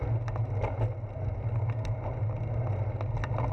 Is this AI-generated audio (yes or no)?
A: no